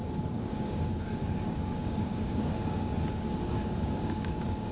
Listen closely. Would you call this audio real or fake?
fake